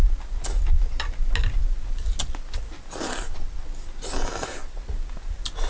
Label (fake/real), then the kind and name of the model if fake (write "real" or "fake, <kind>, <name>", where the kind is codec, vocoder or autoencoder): real